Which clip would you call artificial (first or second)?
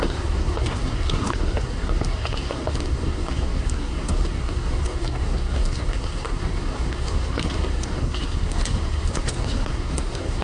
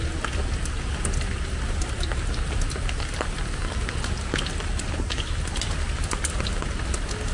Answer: first